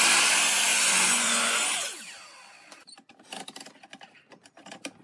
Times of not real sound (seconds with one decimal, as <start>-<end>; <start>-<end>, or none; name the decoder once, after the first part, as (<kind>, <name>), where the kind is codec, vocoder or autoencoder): 0.7-2.0 (vocoder, Vocos)